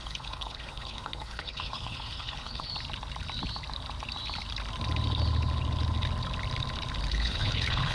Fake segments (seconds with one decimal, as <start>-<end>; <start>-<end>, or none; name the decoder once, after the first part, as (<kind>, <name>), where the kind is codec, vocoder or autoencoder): 0.0-2.7 (codec, HILCodec); 7.1-7.9